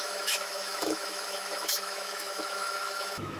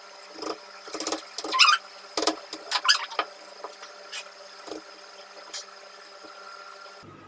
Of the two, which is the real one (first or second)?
second